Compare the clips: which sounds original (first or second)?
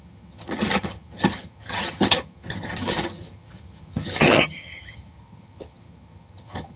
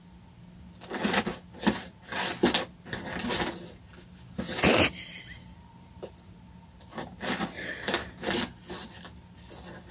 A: second